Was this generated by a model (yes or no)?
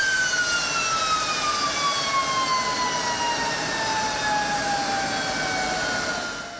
no